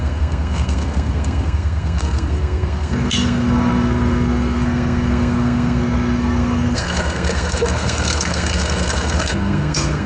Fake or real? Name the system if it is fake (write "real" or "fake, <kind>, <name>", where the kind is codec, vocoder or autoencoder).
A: fake, codec, SNAC